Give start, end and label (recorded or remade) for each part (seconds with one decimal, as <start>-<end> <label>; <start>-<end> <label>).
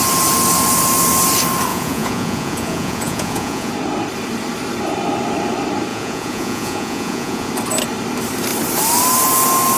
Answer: 0.0-1.7 recorded; 1.7-3.7 remade; 3.7-5.9 recorded; 5.9-7.5 remade; 7.5-9.8 recorded